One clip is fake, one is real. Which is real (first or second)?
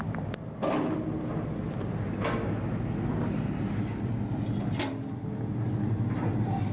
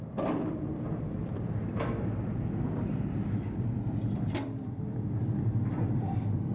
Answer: first